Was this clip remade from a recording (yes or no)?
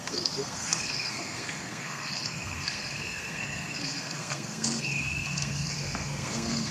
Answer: yes